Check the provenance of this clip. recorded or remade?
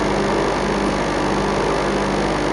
recorded